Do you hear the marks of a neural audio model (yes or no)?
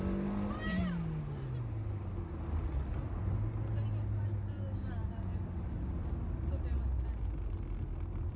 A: no